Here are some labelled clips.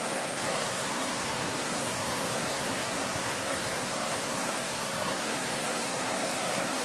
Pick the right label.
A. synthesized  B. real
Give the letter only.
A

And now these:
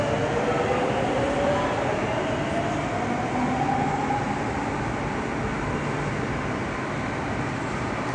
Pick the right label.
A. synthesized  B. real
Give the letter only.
B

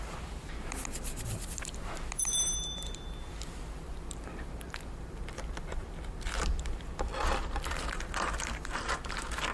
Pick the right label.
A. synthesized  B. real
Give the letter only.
A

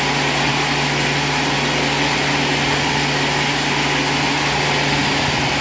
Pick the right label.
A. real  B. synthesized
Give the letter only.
A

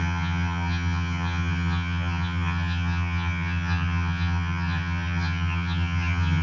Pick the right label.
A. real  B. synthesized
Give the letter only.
B